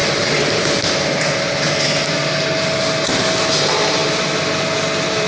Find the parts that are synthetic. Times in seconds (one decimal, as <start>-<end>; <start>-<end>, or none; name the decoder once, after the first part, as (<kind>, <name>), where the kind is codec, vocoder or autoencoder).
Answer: 0.0-0.9 (vocoder, BigVGAN v2)